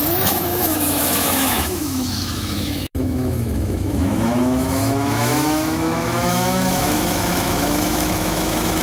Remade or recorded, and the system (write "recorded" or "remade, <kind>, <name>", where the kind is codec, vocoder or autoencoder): remade, autoencoder, DAC-VAE